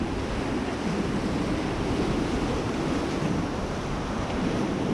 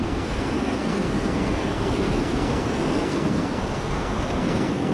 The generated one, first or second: second